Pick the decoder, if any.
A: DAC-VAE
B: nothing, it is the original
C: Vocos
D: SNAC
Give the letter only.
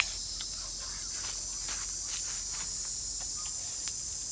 B